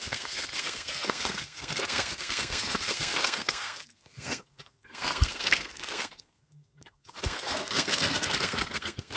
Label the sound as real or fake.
fake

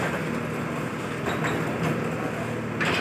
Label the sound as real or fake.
real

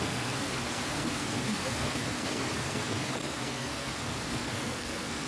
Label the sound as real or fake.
fake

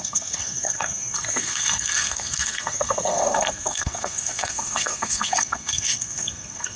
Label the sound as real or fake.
fake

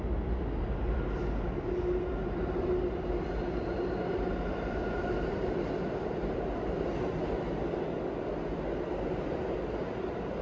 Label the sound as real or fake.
real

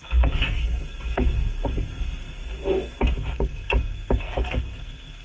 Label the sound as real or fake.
fake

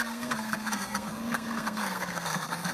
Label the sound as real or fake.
fake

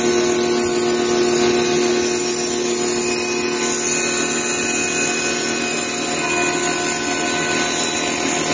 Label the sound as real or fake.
real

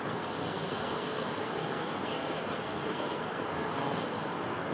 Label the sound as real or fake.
fake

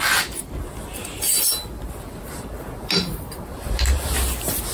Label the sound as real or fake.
real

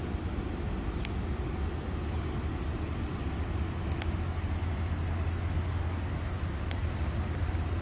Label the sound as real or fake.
real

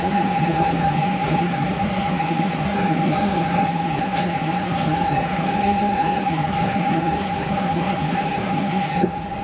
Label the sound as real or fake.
fake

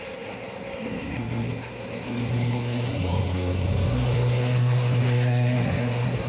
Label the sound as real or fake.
fake